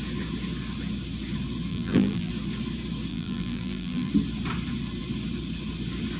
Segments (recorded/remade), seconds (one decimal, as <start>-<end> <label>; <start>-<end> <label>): 0.0-1.7 recorded; 1.7-2.3 remade; 2.3-3.1 recorded; 3.1-4.1 remade; 4.1-6.2 recorded